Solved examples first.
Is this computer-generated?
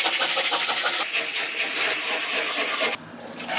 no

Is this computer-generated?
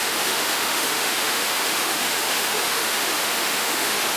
yes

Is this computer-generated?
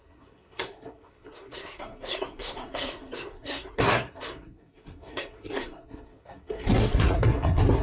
yes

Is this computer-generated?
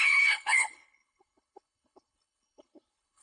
yes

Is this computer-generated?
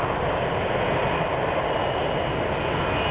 no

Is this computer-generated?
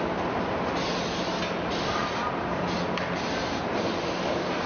no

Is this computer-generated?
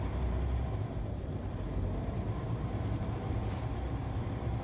yes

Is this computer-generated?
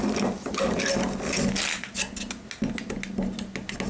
no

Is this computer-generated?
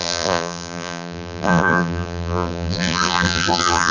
yes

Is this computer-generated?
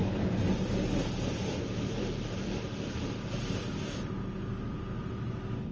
no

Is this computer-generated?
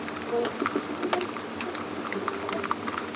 no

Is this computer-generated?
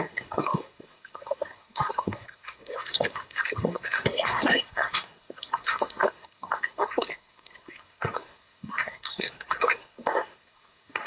yes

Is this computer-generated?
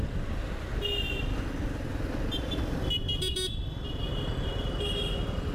no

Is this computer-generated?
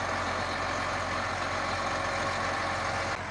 no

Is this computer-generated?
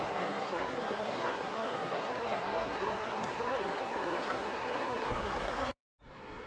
yes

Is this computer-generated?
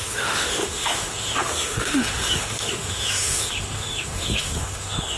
yes